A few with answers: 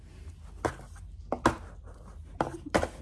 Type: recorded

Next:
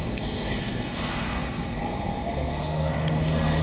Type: remade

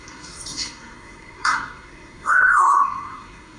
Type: remade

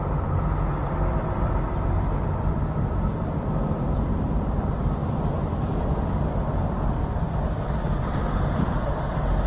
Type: remade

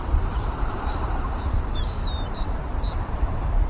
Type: remade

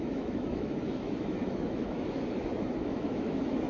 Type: remade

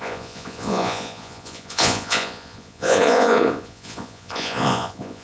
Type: remade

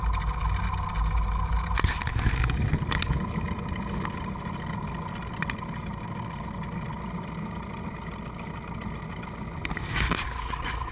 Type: recorded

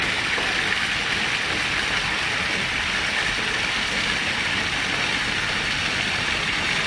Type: recorded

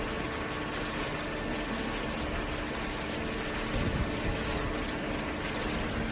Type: recorded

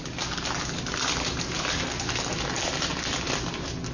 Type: recorded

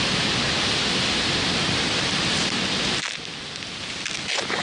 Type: recorded